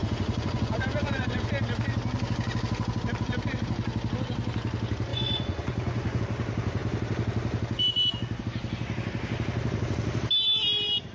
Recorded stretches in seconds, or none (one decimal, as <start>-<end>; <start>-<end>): 1.4-5.1; 6.2-11.1